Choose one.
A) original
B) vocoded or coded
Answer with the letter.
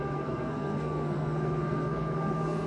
B